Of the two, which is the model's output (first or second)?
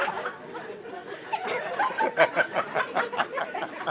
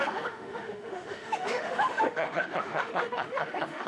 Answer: second